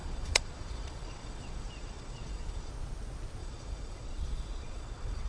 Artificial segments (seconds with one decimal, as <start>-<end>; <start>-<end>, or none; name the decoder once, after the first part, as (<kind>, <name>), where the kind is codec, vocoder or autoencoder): 0.0-2.7 (vocoder, Vocos); 3.4-5.3